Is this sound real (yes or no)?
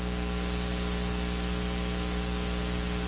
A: yes